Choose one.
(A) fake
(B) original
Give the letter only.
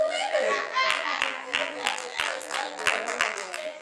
A